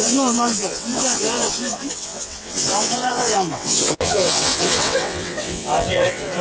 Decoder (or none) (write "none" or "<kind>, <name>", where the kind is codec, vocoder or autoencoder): vocoder, WaveNeXt